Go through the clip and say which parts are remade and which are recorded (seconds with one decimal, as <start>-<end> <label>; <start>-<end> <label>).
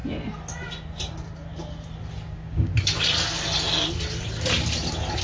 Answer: 0.0-2.3 recorded; 2.3-2.7 remade; 2.7-5.2 recorded